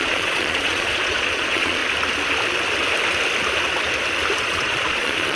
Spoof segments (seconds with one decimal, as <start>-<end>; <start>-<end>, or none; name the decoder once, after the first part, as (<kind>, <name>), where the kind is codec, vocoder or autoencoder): 0.0-1.8 (vocoder, Vocos); 4.4-5.4